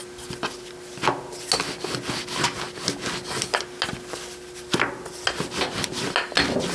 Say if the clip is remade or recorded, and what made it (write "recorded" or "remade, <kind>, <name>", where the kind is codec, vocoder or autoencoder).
recorded